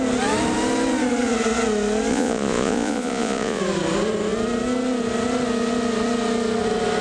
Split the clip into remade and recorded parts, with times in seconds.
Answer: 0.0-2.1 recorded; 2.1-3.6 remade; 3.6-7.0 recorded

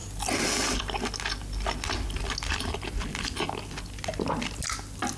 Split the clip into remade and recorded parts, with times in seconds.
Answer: 0.0-5.2 recorded

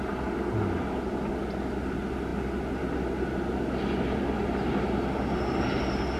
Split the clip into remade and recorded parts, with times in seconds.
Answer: 0.0-6.2 recorded

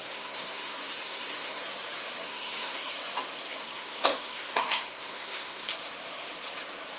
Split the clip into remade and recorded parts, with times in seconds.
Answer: 0.0-1.6 remade; 1.6-2.2 recorded; 2.2-2.9 remade; 2.9-3.5 recorded; 3.5-5.7 remade; 5.7-7.0 recorded